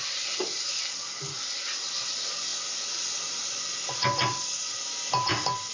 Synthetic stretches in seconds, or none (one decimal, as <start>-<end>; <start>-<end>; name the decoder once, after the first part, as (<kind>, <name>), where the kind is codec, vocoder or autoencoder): none